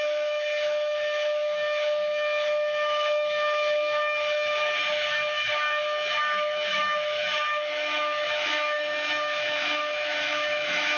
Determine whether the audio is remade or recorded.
remade